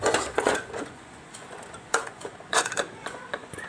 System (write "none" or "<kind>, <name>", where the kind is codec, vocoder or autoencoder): vocoder, Vocos